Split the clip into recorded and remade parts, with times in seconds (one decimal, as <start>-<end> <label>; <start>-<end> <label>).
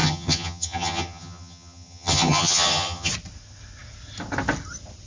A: 0.0-3.1 remade; 3.1-5.1 recorded